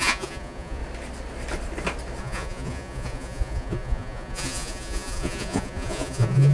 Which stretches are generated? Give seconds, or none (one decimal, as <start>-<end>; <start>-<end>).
0.0-0.8; 2.2-6.5